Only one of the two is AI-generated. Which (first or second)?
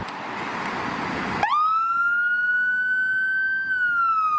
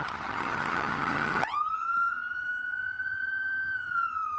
second